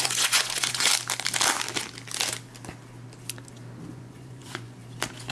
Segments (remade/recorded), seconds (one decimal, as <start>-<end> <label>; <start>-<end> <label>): 0.0-0.9 remade; 0.9-3.9 recorded; 3.9-4.8 remade; 4.8-5.3 recorded